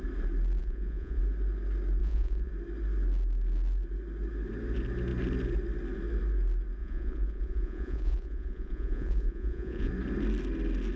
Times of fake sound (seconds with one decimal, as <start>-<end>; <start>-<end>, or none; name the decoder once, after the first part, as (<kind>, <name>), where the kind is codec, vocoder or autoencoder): 0.6-1.2 (vocoder, Vocos); 2.0-2.5; 6.8-9.9

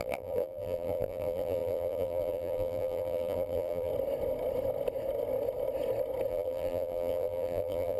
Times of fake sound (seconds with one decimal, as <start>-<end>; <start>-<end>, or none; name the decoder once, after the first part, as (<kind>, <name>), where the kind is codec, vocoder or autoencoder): 0.0-3.9 (vocoder, BigVGAN v2); 6.3-8.0

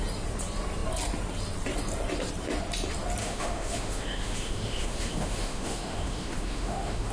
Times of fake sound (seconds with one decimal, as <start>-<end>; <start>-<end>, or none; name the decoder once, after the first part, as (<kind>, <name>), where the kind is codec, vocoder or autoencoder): 3.2-7.1 (autoencoder, DAC-VAE)

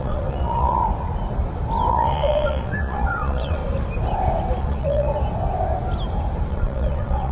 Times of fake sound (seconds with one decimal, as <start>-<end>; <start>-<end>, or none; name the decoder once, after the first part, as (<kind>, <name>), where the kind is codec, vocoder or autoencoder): 0.0-0.8 (vocoder, WaveNeXt); 1.9-3.6; 4.6-5.1; 6.5-7.3